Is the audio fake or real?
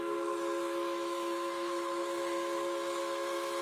fake